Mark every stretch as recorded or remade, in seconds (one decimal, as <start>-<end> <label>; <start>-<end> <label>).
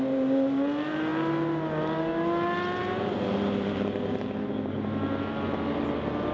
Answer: 0.0-6.3 recorded